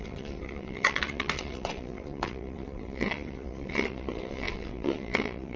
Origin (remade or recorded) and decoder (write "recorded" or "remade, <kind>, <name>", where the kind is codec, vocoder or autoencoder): remade, vocoder, WaveNeXt